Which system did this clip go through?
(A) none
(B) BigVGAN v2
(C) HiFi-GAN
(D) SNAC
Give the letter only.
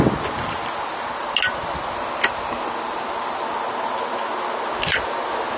A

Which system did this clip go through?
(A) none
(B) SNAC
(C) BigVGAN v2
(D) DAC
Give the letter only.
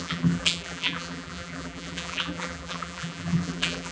C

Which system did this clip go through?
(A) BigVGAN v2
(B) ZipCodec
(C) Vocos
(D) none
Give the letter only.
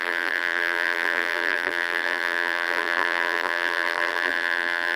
A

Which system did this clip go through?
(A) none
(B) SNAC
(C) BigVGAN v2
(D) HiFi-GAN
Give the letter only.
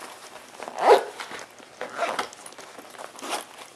A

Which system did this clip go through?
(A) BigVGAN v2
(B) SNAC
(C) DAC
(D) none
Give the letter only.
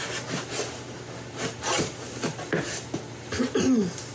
A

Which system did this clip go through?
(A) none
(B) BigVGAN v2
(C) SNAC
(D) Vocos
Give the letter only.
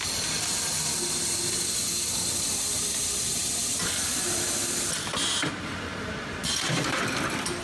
A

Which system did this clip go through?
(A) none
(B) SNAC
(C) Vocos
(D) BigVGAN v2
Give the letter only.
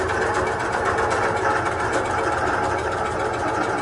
D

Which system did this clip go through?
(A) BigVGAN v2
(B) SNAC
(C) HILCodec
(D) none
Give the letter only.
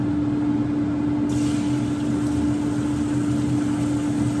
D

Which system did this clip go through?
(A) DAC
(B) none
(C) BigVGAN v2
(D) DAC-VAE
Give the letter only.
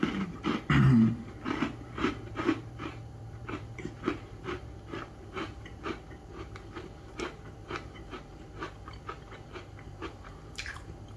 C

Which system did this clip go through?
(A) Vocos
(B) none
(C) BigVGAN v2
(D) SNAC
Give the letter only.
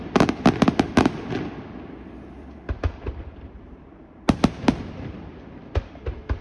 C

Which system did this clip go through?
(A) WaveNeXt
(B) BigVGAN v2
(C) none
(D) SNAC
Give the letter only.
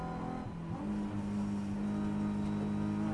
C